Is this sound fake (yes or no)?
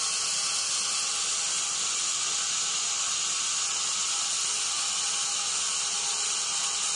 no